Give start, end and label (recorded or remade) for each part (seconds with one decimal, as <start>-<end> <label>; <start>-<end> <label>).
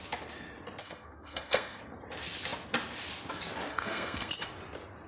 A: 0.0-0.8 recorded; 0.8-1.8 remade; 1.8-3.7 recorded; 3.7-4.3 remade; 4.3-5.1 recorded